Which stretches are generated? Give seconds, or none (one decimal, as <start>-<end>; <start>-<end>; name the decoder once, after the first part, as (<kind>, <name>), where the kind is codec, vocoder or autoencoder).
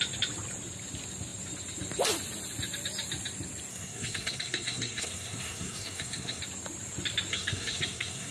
3.7-6.4 (codec, SNAC); 7.3-8.3